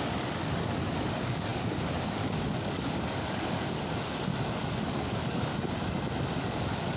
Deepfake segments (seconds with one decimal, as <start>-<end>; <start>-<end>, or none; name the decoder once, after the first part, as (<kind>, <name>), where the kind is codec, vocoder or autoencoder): 0.0-4.3 (codec, DAC); 4.8-5.5; 6.4-7.0